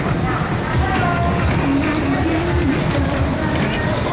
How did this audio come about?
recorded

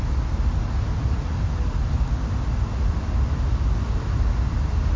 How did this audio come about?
recorded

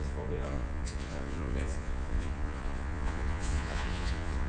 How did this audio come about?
remade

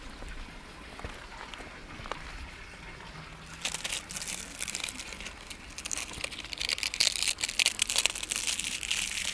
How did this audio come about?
recorded